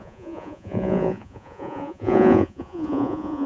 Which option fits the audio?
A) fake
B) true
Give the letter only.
A